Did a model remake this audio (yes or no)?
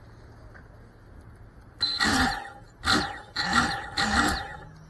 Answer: no